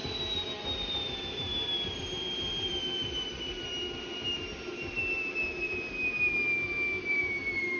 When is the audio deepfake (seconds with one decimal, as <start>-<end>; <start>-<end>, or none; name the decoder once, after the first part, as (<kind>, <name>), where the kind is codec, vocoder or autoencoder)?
0.0-7.8 (vocoder, BigVGAN v2)